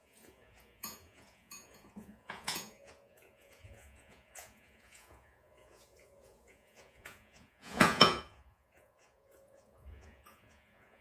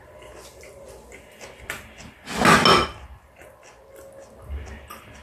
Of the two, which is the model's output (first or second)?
first